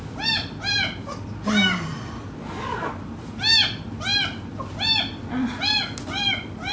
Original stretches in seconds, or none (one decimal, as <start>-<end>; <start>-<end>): 0.0-6.7